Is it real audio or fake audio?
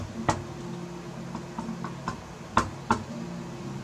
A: real